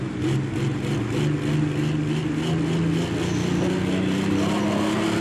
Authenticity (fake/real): real